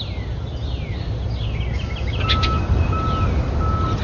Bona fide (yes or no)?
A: yes